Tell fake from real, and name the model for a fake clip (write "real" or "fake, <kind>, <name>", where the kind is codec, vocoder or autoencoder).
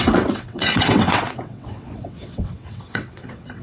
fake, vocoder, WaveNeXt